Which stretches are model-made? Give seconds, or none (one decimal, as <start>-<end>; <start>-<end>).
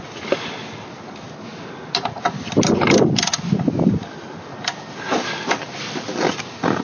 none